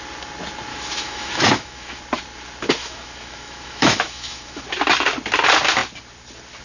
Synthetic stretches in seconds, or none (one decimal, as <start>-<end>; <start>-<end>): 0.7-2.0; 2.8-4.6